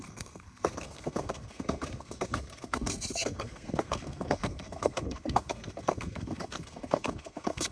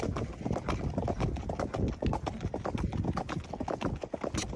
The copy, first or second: first